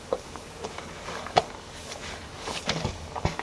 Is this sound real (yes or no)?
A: no